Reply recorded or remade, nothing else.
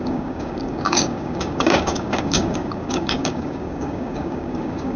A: remade